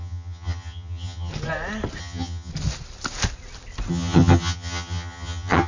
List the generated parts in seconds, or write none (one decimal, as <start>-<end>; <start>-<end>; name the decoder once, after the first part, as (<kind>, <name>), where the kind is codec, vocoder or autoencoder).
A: 0.0-1.3 (vocoder, HiFi-GAN); 2.0-2.5; 3.9-5.7